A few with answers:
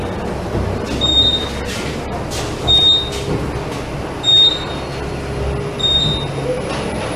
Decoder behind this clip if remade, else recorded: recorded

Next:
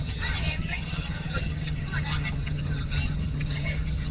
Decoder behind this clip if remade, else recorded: remade, vocoder, HiFi-GAN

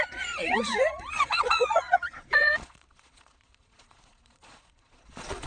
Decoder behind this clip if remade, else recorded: remade, vocoder, Vocos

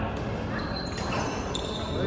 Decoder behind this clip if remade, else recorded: recorded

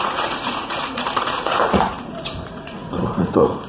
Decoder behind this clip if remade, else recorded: remade, vocoder, Vocos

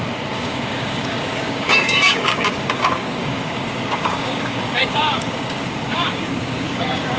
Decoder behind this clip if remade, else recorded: remade, codec, DAC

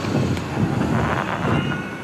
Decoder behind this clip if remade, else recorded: recorded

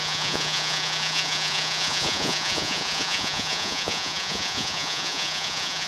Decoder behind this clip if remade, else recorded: remade, vocoder, Vocos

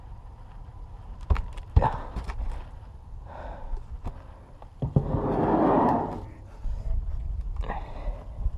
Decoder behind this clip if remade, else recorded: remade, vocoder, BigVGAN v2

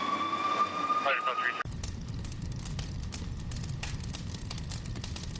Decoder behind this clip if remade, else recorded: recorded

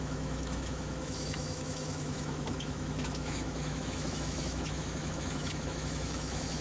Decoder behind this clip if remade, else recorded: remade, autoencoder, DAC-VAE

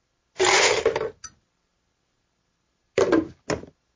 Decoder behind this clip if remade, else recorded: recorded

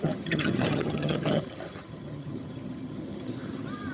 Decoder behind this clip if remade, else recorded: remade, vocoder, HiFi-GAN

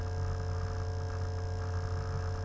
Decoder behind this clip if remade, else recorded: recorded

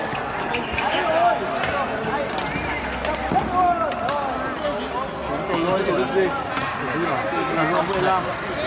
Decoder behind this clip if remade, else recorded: recorded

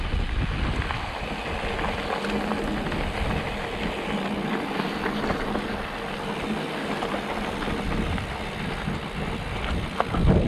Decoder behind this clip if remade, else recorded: recorded